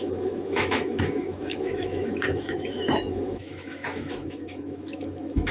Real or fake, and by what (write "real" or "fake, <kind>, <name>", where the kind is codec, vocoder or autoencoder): fake, autoencoder, DAC-VAE